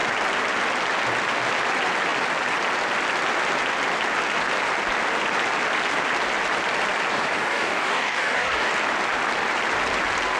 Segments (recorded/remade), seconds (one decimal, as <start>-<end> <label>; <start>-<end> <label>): 0.0-7.1 recorded; 7.1-8.7 remade; 8.7-10.4 recorded